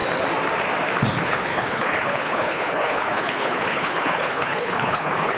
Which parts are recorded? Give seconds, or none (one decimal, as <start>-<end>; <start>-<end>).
0.0-1.1